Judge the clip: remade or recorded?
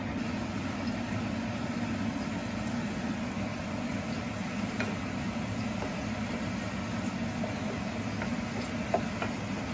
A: recorded